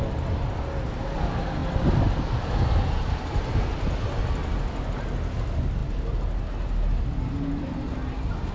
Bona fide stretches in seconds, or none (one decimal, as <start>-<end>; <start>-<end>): 0.0-8.5